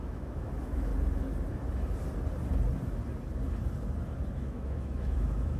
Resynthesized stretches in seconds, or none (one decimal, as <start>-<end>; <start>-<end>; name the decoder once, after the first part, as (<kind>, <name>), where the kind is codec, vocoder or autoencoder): 0.0-0.9 (autoencoder, DAC-VAE); 4.3-5.6